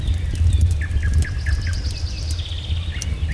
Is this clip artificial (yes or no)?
no